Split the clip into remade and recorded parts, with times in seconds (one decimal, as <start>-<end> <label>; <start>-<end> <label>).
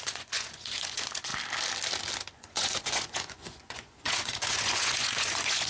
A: 0.0-1.3 remade; 1.3-2.3 recorded; 2.3-5.7 remade